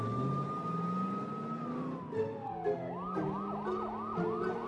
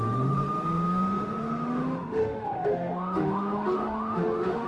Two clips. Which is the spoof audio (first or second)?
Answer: second